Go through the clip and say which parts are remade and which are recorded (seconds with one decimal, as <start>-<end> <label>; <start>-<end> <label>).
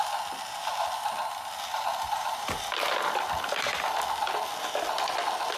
0.0-1.7 recorded; 1.7-2.6 remade; 2.6-5.6 recorded